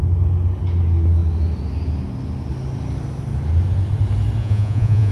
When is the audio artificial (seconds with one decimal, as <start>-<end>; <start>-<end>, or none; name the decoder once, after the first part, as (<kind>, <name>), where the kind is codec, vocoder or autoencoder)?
4.4-5.1 (vocoder, Vocos)